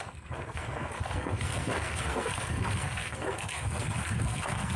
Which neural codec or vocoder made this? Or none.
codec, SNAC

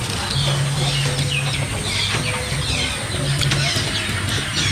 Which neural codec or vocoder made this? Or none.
none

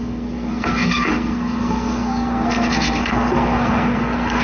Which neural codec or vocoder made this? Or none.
codec, SNAC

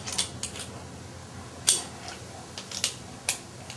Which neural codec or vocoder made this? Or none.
none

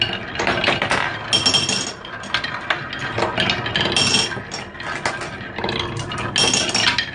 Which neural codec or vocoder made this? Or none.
none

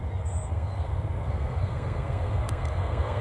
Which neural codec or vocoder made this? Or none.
codec, SNAC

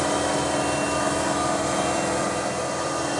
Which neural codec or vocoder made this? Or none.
none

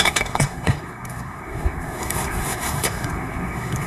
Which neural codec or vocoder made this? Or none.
codec, SNAC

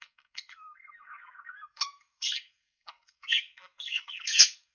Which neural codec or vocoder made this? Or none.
codec, SNAC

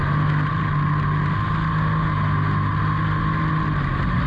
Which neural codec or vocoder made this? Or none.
none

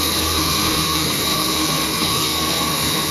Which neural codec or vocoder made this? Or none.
codec, SNAC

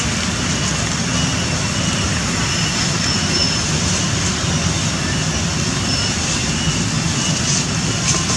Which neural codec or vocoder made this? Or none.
none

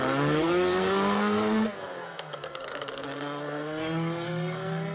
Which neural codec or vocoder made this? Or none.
codec, SNAC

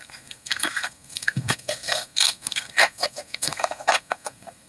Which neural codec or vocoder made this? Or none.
codec, SNAC